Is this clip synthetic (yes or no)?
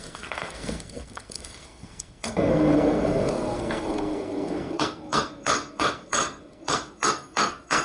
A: yes